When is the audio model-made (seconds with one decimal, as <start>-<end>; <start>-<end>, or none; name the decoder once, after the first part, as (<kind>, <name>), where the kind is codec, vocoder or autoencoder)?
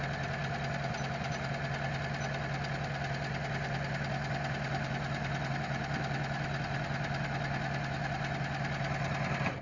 none